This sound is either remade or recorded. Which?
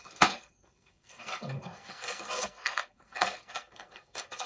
remade